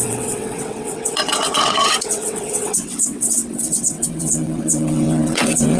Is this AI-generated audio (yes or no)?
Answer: yes